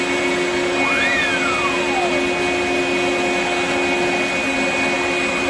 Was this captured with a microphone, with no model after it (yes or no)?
yes